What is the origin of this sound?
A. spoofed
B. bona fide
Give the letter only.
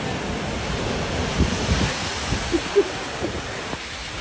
B